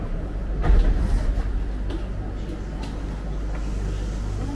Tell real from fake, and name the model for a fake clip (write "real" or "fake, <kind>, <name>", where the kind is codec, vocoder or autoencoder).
real